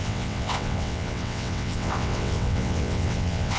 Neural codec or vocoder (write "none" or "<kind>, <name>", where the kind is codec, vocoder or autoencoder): vocoder, WaveNeXt